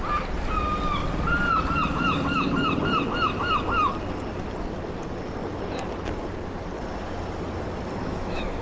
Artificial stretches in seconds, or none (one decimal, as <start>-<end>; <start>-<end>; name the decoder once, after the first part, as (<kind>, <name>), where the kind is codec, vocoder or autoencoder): 8.0-8.6 (autoencoder, DAC-VAE)